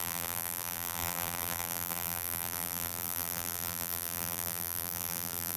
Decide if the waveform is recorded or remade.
remade